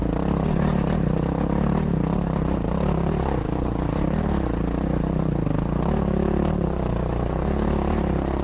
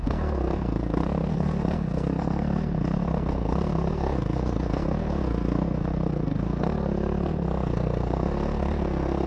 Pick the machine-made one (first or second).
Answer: second